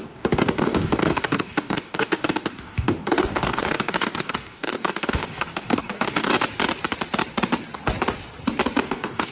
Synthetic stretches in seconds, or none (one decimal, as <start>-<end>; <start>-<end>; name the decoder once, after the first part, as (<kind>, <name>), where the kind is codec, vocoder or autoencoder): 0.0-6.3 (codec, DAC); 8.8-9.3

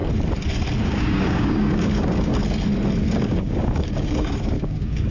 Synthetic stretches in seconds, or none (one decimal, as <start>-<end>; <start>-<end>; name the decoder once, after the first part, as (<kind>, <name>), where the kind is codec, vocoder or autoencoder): 0.8-2.3 (codec, DAC); 3.1-5.1

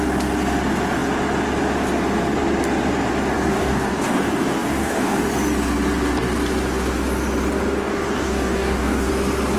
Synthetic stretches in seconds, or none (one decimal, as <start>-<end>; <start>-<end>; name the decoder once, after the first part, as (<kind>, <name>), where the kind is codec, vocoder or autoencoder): 3.3-5.2 (codec, DAC); 7.8-9.1

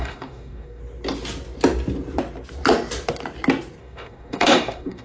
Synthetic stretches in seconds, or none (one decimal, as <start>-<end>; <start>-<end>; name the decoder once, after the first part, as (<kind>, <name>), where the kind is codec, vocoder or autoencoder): 0.0-0.8 (codec, DAC); 3.8-5.0

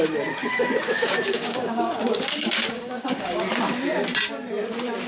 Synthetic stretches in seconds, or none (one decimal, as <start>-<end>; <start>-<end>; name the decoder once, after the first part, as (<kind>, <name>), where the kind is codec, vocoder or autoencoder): 0.4-3.5 (codec, DAC)

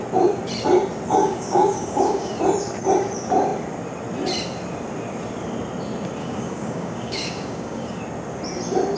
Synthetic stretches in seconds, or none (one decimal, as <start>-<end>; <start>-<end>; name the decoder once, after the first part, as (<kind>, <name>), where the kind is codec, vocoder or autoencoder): 1.2-2.4 (codec, DAC); 6.2-8.0